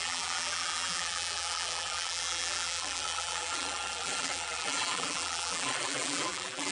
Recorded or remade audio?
remade